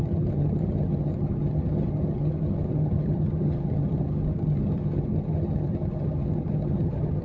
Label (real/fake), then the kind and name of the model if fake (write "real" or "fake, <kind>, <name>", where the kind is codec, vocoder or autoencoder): fake, vocoder, HiFi-GAN